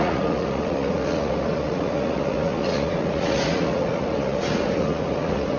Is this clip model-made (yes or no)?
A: yes